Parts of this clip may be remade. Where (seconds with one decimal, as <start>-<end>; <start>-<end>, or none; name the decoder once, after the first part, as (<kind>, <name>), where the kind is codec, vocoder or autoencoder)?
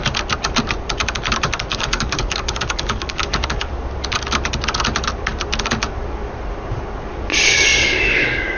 1.7-3.7 (codec, DAC); 7.5-8.6